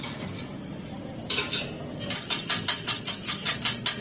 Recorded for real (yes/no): yes